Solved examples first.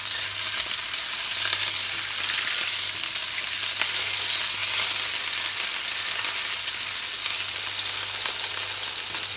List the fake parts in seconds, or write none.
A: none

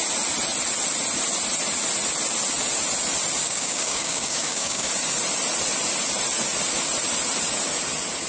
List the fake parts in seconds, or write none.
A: 3.4-4.9 (codec, DAC)

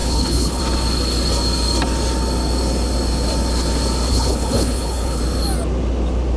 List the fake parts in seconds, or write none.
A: 0.0-0.6 (codec, HILCodec); 4.1-5.2

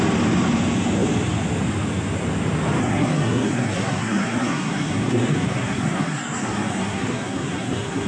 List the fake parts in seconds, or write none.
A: 2.8-8.1 (codec, SNAC)

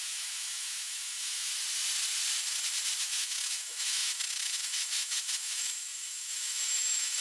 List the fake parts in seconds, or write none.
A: 0.0-1.5 (autoencoder, DAC-VAE); 3.0-7.2